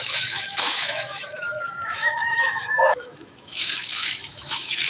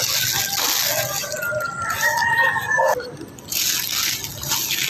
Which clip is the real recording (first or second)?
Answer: second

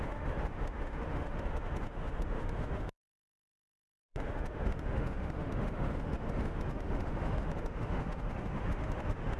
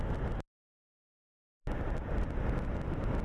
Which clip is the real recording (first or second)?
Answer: second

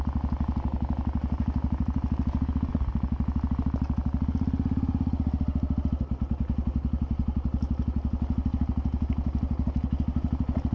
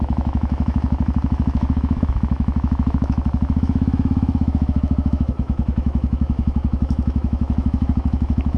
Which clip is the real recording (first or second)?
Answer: first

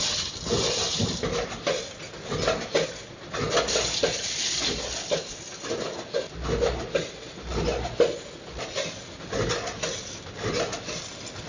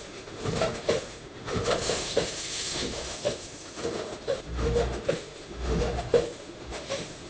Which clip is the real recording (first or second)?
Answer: first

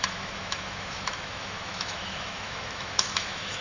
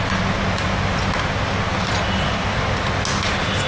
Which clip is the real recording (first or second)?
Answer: second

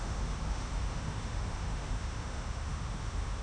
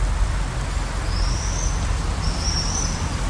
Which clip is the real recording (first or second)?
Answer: second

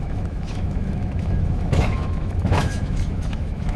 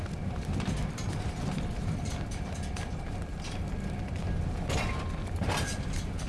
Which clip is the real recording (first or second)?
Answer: second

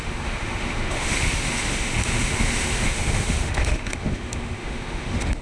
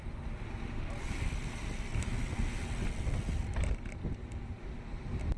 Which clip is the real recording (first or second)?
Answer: second